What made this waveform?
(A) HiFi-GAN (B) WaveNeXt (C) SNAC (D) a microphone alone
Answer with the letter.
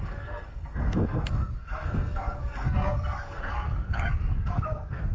C